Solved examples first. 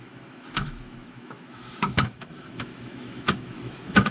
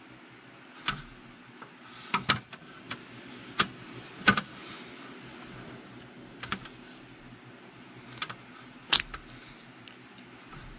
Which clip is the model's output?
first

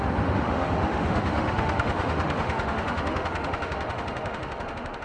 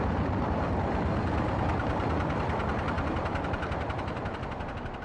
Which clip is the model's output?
first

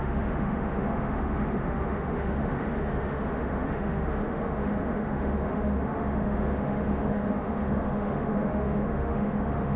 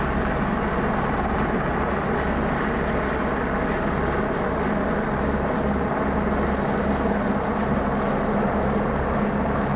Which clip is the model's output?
first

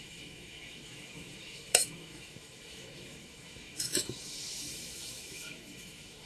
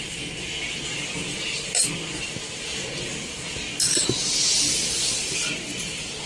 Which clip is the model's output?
first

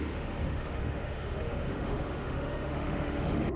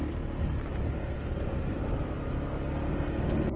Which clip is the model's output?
first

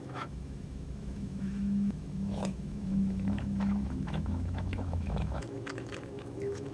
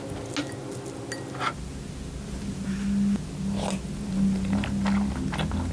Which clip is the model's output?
first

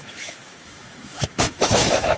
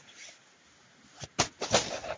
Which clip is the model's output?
first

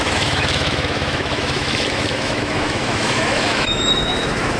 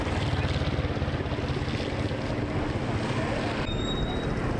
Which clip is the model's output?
first